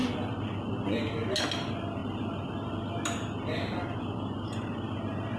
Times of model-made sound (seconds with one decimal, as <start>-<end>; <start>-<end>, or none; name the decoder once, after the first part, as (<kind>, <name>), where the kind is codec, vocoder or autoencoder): none

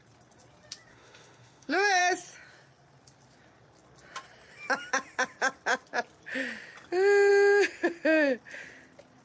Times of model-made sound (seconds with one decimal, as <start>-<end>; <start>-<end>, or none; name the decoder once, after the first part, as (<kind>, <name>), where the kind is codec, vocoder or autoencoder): 0.9-2.0 (autoencoder, DAC-VAE)

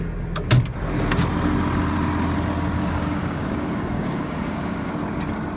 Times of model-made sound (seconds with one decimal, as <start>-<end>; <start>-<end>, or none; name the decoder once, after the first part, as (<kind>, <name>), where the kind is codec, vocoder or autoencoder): 2.8-4.9 (codec, DAC)

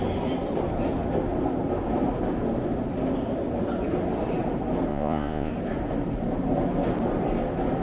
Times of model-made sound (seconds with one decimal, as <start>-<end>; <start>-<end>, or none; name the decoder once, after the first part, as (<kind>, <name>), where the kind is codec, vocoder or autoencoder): 4.9-5.5 (vocoder, Vocos)

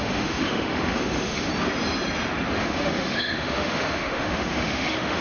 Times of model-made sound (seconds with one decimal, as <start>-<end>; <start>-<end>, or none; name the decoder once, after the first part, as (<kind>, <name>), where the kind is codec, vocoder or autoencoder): 0.0-1.5 (autoencoder, DAC-VAE); 2.6-5.2

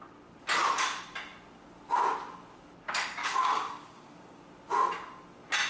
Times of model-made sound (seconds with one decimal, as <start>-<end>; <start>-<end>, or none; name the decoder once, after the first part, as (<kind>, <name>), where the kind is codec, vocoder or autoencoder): 3.2-4.4 (codec, DAC)